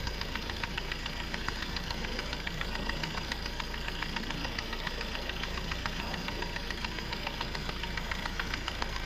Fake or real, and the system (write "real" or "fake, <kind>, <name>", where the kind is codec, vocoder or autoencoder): fake, codec, SNAC